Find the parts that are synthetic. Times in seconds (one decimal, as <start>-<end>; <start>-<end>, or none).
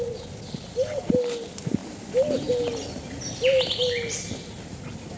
none